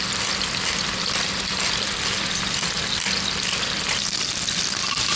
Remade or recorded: recorded